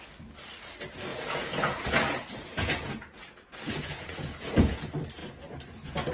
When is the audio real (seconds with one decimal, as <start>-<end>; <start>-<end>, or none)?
0.0-1.1; 4.8-6.1